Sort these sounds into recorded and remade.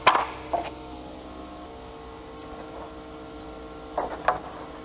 recorded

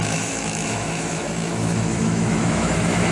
remade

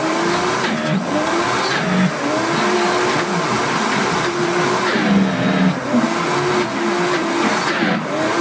recorded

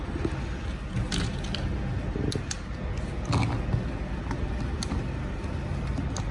recorded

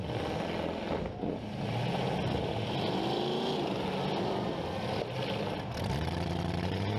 recorded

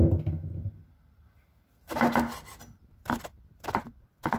recorded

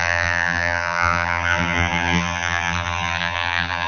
remade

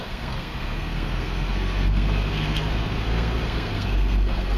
remade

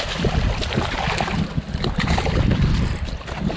recorded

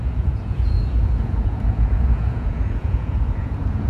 remade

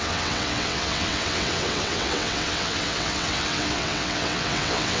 remade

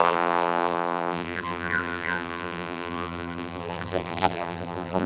remade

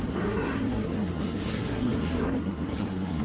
remade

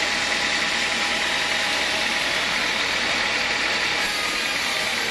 recorded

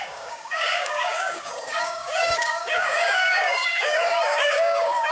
remade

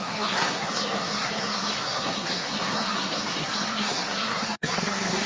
remade